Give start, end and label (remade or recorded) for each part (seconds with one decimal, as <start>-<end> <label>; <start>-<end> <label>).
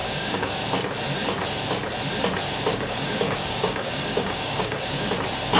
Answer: 0.0-0.6 remade; 0.6-2.7 recorded; 2.7-5.1 remade; 5.1-5.6 recorded